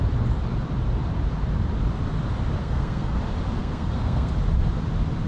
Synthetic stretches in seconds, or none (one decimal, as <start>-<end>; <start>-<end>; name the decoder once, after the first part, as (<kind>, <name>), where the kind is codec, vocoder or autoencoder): 2.6-3.2 (codec, SNAC); 3.6-4.3